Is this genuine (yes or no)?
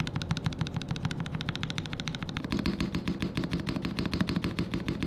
yes